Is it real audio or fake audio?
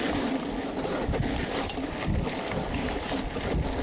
real